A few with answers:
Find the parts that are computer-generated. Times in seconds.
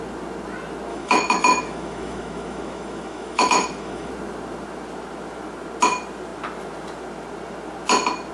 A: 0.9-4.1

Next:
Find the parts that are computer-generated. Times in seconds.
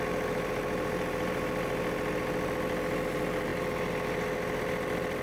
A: none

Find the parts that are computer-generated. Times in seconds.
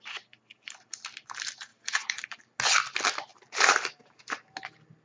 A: 1.7-2.6; 3.3-4.2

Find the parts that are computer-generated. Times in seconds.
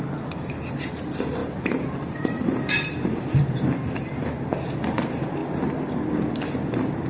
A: 0.0-5.4; 6.3-7.1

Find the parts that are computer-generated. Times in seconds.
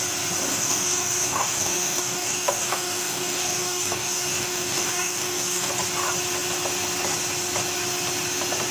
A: 0.5-5.7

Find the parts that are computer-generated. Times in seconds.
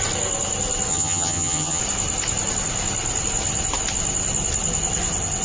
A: 0.9-1.8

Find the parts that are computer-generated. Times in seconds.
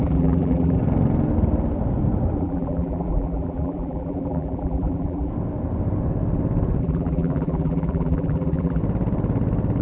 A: 0.0-0.8; 2.4-5.3; 6.8-8.8